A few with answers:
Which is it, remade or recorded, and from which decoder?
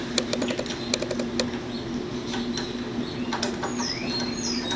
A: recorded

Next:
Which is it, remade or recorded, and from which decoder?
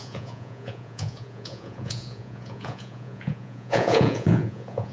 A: remade, vocoder, Vocos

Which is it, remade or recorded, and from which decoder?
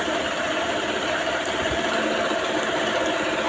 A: recorded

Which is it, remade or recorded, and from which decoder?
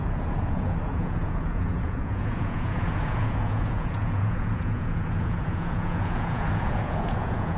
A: remade, vocoder, Vocos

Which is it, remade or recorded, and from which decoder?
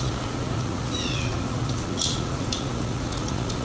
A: remade, vocoder, Vocos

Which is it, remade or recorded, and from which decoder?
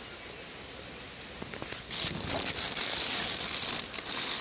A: recorded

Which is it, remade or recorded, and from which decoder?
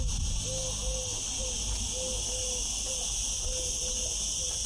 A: recorded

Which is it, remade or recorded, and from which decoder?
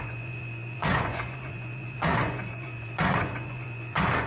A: remade, vocoder, Vocos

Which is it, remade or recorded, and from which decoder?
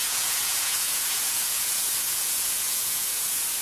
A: remade, vocoder, Vocos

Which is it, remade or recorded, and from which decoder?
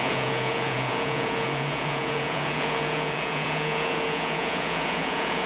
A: remade, vocoder, Vocos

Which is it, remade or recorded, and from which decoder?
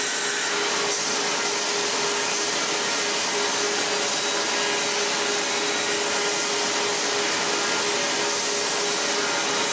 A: recorded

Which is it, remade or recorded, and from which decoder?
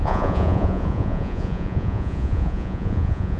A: remade, vocoder, Vocos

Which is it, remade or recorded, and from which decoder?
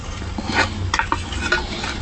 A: recorded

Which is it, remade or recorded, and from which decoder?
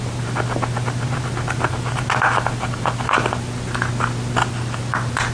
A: recorded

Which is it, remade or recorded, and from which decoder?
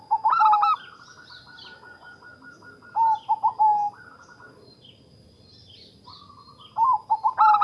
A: recorded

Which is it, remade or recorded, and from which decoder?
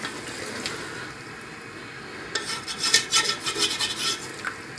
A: recorded